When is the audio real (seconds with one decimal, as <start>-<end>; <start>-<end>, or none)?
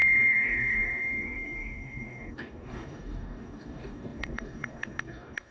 none